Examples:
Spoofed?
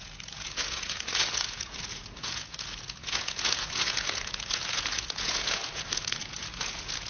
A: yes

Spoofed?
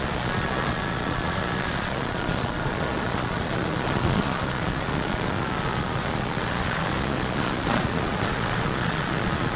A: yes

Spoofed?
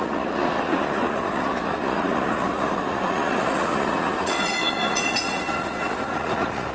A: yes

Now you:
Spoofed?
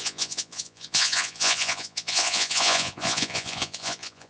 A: yes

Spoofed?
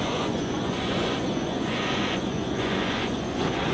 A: yes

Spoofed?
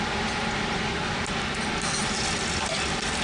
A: no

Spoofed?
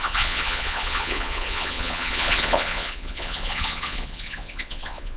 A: yes